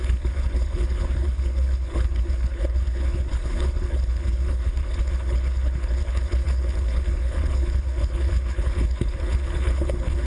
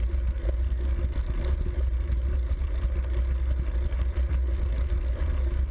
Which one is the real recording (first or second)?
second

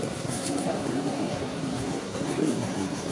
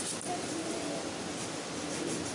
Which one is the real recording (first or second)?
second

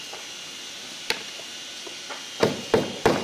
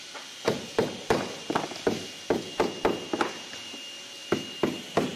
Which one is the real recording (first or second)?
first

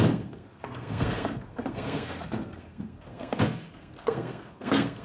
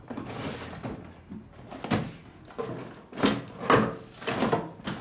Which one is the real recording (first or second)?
second